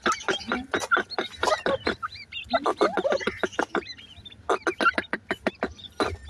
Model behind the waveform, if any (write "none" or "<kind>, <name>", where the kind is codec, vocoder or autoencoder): none